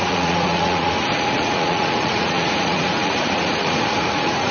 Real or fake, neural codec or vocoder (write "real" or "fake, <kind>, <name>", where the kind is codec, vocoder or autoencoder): fake, vocoder, Vocos